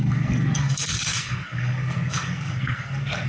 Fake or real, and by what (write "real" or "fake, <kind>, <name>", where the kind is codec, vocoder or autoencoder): fake, codec, SNAC